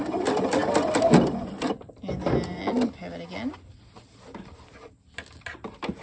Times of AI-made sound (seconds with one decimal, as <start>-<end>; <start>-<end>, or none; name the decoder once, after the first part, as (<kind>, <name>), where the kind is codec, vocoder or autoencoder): none